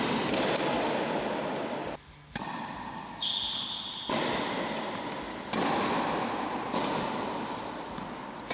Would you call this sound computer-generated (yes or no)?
no